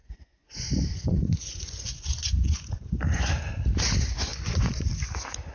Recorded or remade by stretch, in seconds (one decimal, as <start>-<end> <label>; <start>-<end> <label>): 0.0-3.3 remade; 3.3-4.3 recorded; 4.3-4.9 remade; 4.9-5.5 recorded